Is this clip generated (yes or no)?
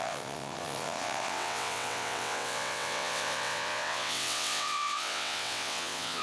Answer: yes